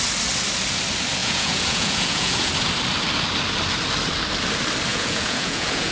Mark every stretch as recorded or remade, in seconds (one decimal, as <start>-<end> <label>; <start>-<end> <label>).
0.0-1.2 recorded; 1.2-2.5 remade; 2.5-4.9 recorded; 4.9-5.9 remade